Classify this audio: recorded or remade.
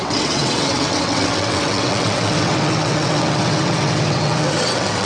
remade